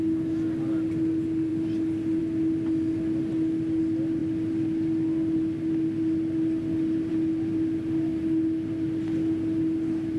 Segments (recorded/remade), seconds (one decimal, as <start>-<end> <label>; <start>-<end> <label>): 0.0-10.2 recorded